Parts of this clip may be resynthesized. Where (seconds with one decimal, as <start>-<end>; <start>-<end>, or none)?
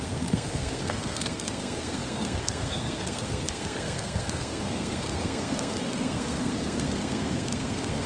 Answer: 0.0-8.1